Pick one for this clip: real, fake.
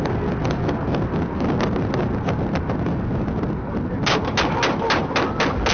real